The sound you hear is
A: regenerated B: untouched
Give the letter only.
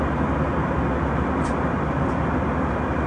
B